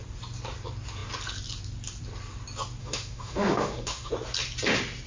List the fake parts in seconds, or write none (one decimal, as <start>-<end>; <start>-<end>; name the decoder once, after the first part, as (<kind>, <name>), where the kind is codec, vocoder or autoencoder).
2.8-4.1 (autoencoder, DAC-VAE)